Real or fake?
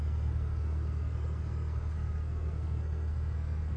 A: fake